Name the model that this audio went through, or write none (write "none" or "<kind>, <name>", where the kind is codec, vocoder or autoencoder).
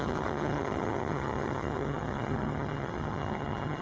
vocoder, HiFi-GAN